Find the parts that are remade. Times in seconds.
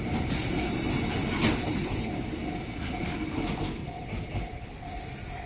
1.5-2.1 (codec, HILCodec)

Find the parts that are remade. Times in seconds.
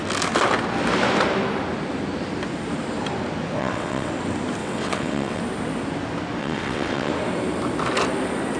3.6-4.1 (vocoder, WaveNeXt); 4.6-5.4; 6.4-7.1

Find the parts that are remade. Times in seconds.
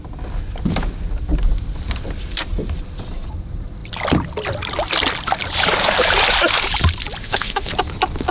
7.2-7.7 (autoencoder, DAC-VAE)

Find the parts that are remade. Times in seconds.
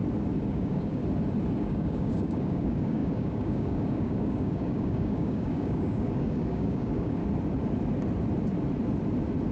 0.5-1.0 (codec, DAC); 1.6-7.2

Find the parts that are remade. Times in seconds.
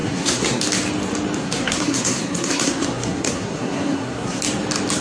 0.0-0.6 (codec, SNAC); 1.4-4.4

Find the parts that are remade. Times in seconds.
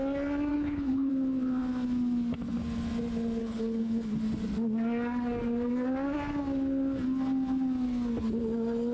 0.5-1.1 (codec, HILCodec); 3.4-4.2